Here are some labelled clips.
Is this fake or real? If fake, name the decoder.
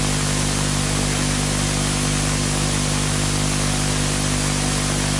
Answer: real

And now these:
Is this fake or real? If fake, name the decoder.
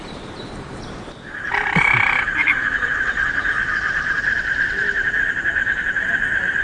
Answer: fake, vocoder, BigVGAN v2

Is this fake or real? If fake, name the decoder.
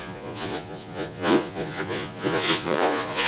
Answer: fake, vocoder, Vocos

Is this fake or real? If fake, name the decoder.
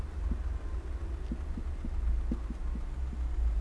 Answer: real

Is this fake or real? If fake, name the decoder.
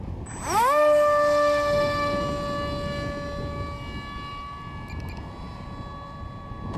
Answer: real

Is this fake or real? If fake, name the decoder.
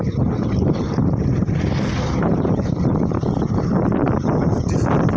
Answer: fake, vocoder, BigVGAN v2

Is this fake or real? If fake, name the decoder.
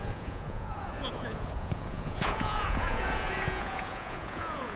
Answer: fake, vocoder, Vocos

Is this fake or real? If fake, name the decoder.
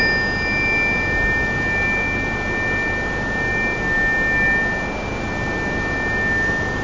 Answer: real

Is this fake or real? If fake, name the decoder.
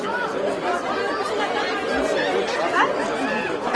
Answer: real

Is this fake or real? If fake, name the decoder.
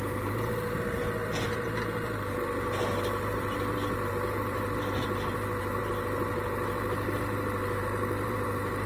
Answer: fake, vocoder, BigVGAN v2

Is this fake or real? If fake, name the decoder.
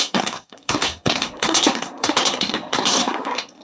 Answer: fake, codec, SNAC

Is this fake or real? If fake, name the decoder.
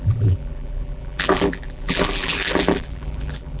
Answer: fake, vocoder, BigVGAN v2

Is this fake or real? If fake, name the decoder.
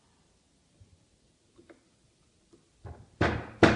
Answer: real